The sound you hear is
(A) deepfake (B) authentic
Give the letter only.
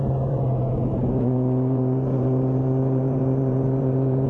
A